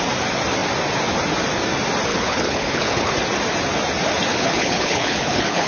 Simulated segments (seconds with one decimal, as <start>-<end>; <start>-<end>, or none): 2.1-3.1; 4.3-5.7